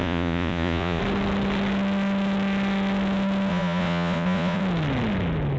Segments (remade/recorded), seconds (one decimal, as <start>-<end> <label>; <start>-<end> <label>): 0.0-1.0 remade; 1.0-3.5 recorded; 3.5-4.6 remade; 4.6-5.6 recorded